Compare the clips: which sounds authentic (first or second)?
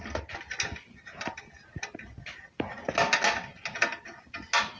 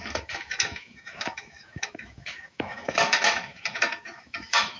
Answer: first